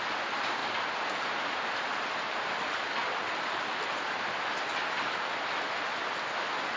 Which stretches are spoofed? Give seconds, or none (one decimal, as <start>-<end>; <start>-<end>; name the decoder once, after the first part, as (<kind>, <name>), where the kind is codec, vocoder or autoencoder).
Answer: none